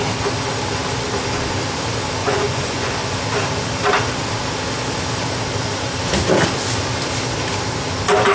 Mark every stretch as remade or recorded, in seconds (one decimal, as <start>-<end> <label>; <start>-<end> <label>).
0.0-2.2 recorded; 2.2-2.9 remade; 2.9-8.3 recorded

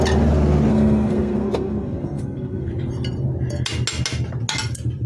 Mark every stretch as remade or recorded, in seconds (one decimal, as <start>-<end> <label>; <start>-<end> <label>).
0.0-0.7 recorded; 0.7-2.7 remade; 2.7-5.1 recorded